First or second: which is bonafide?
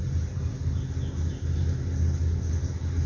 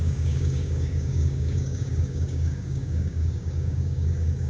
first